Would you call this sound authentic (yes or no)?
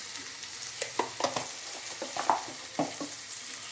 yes